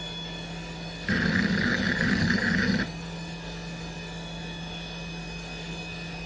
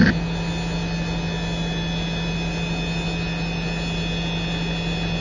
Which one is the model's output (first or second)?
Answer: first